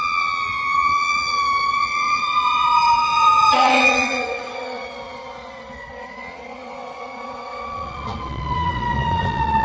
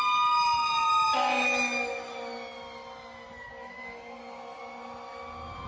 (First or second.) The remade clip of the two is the first